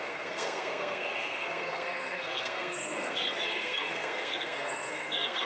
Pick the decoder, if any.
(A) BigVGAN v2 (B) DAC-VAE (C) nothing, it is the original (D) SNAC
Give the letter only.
D